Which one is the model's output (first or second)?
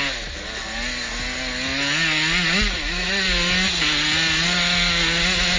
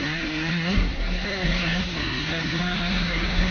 second